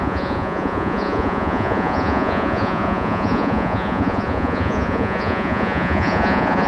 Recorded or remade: remade